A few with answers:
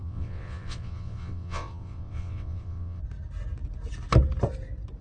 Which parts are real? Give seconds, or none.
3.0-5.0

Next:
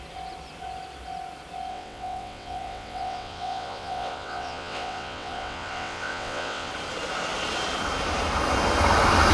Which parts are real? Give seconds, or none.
0.0-1.7; 6.7-9.3

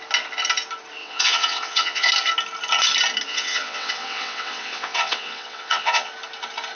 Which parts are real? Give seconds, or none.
0.0-1.0; 2.1-3.3; 6.1-6.8

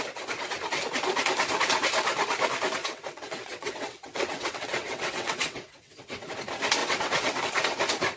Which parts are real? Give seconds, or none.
0.0-2.8; 6.3-6.8; 7.4-8.2

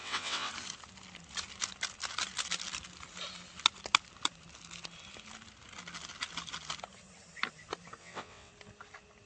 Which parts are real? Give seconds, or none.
0.5-8.0; 8.5-9.3

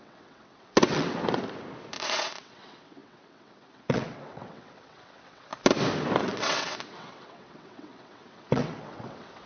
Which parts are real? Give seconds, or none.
1.2-2.0; 5.5-6.2

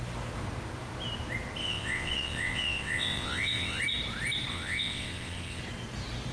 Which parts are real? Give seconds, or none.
0.0-1.6; 3.8-4.5; 5.6-6.3

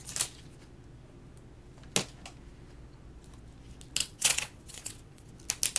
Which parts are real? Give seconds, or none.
0.0-4.0; 5.3-5.8